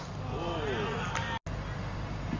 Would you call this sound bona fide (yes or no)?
yes